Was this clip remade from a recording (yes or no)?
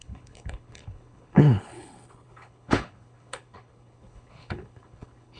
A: yes